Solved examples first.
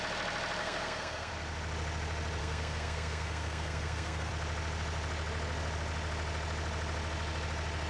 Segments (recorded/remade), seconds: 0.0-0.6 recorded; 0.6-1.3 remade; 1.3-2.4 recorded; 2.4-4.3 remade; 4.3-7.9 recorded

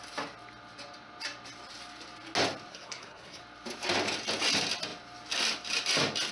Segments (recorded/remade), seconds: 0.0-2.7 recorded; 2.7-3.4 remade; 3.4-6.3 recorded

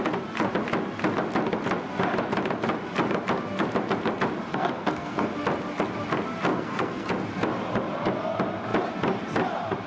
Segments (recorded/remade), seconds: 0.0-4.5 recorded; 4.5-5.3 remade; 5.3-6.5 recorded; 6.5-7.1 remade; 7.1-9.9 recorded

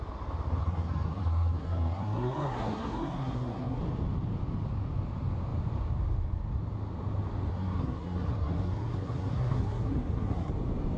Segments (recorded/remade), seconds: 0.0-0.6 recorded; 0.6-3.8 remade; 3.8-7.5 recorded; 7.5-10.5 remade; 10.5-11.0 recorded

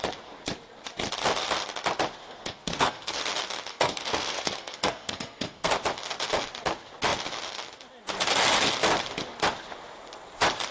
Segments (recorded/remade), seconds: 0.0-2.2 recorded; 2.2-3.2 remade; 3.2-3.7 recorded; 3.7-5.7 remade; 5.7-10.7 recorded

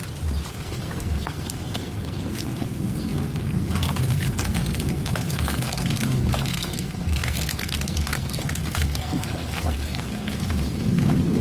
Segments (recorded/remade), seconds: 0.0-0.5 recorded; 0.5-11.4 remade